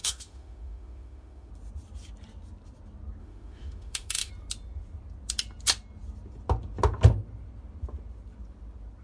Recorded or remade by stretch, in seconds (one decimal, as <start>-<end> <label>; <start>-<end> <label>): 0.0-1.5 remade; 1.5-3.2 recorded; 3.2-4.3 remade; 4.3-9.0 recorded